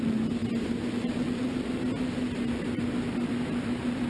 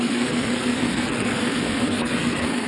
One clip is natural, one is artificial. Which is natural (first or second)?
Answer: first